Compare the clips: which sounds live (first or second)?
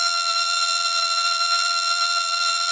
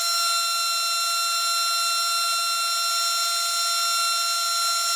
second